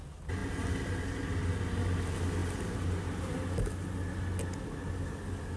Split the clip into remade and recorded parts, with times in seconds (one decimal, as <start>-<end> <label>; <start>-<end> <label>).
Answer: 0.0-5.6 recorded